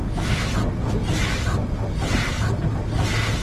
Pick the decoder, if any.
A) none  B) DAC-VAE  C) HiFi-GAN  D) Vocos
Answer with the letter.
A